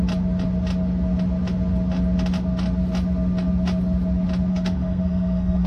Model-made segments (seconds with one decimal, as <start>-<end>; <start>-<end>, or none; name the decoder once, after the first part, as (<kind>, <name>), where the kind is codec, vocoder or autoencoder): 4.5-5.7 (codec, SNAC)